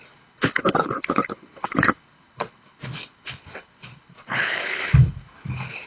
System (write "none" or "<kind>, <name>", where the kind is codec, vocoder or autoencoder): codec, HILCodec